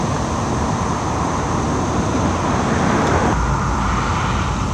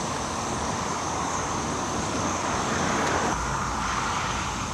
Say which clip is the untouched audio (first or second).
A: first